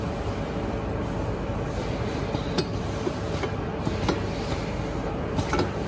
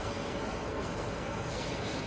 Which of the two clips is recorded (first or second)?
first